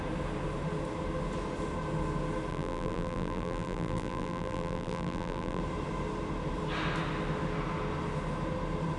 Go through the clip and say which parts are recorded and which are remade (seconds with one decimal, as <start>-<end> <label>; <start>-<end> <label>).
0.0-2.5 recorded; 2.5-5.6 remade; 5.6-9.0 recorded

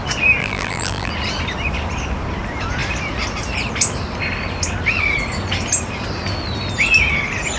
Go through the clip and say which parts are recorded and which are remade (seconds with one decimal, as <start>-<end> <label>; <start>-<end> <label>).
0.0-0.4 recorded; 0.4-1.1 remade; 1.1-7.6 recorded

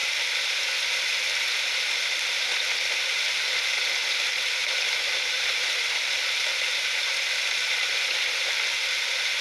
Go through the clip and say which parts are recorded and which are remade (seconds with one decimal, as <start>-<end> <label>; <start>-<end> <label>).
0.0-0.6 remade; 0.6-1.1 recorded; 1.1-2.6 remade; 2.6-4.6 recorded; 4.6-6.5 remade; 6.5-9.4 recorded

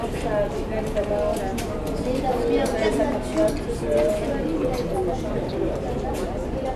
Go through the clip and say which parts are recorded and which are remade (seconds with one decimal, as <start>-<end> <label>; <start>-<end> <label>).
0.0-1.5 recorded; 1.5-2.3 remade; 2.3-6.8 recorded

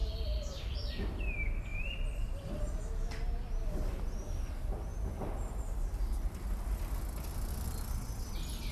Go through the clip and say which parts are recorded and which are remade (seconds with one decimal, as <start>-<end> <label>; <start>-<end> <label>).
0.0-0.9 remade; 0.9-1.7 recorded; 1.7-2.8 remade; 2.8-8.7 recorded

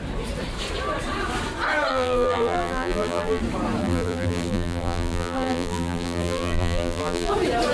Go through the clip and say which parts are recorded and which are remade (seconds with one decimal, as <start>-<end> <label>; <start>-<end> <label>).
0.0-1.9 recorded; 1.9-3.4 remade; 3.4-3.8 recorded; 3.8-7.3 remade; 7.3-7.7 recorded

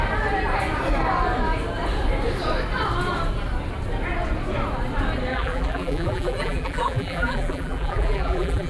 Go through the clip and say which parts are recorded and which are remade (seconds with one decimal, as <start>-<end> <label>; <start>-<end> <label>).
0.0-5.3 recorded; 5.3-8.7 remade